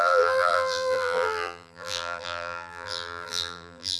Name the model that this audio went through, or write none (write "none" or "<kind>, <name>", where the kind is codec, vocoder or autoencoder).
vocoder, BigVGAN v2